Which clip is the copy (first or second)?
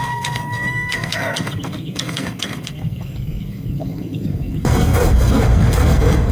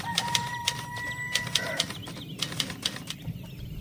first